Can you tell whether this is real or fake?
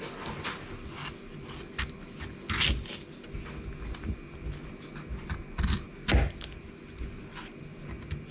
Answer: real